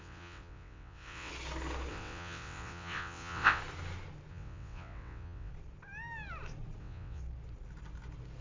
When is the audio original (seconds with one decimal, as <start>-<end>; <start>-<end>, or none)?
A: 1.3-1.9; 3.6-4.3; 5.5-6.8; 7.2-8.4